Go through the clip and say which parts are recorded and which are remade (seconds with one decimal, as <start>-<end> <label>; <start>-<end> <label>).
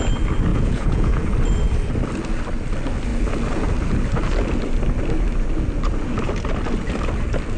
0.0-0.5 recorded; 0.5-1.3 remade; 1.3-7.6 recorded